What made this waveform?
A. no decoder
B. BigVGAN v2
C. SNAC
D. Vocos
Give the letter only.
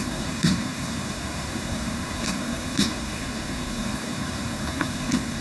C